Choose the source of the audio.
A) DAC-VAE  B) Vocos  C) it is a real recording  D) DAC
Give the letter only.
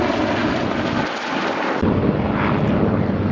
C